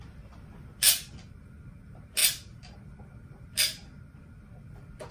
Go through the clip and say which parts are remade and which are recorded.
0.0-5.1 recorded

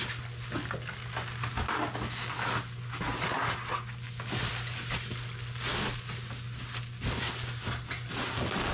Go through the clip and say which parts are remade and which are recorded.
0.0-8.7 recorded

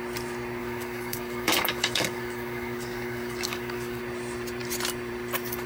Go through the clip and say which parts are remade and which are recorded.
0.0-0.6 recorded; 0.6-4.0 remade; 4.0-5.7 recorded

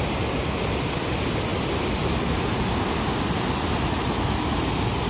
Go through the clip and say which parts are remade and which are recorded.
0.0-5.1 recorded

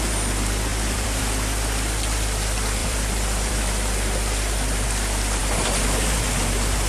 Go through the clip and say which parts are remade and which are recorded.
0.0-0.7 recorded; 0.7-1.2 remade; 1.2-2.8 recorded; 2.8-3.5 remade; 3.5-6.9 recorded